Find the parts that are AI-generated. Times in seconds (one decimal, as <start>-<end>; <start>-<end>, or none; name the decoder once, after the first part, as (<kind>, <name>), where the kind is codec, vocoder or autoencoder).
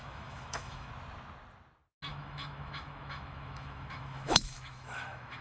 0.0-0.9 (autoencoder, DAC-VAE); 2.1-5.4